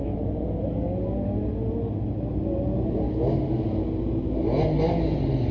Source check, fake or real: real